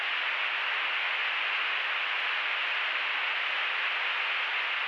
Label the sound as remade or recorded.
recorded